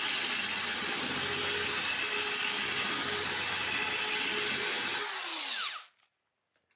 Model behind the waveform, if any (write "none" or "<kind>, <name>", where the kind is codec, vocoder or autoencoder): none